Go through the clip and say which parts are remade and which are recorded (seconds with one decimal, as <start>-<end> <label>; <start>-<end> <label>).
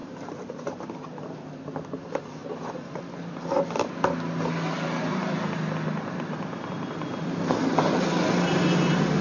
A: 0.0-0.8 remade; 0.8-9.2 recorded